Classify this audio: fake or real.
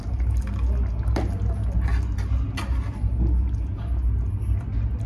real